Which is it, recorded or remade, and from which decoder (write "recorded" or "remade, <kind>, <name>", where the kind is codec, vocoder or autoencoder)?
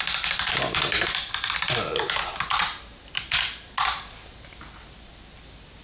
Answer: recorded